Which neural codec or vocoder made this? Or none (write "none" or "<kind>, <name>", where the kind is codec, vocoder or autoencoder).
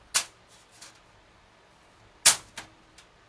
none